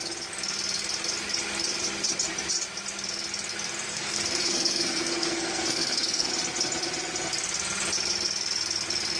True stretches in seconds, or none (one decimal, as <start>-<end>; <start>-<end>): 0.0-3.9; 6.3-9.2